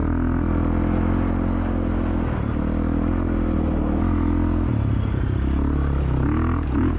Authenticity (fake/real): real